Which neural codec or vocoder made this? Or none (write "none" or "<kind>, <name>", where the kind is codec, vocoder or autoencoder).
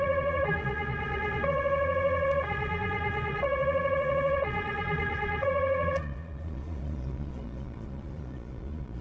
vocoder, Vocos